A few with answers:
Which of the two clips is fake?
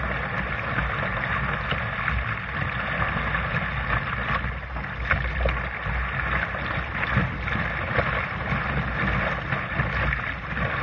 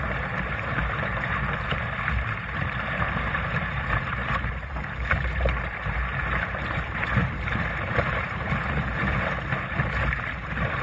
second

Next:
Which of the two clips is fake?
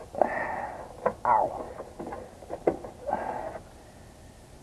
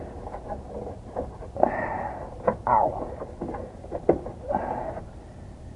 second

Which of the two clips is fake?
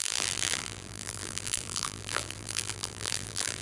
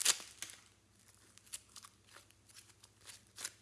first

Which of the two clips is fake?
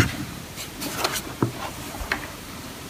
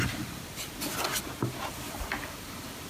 first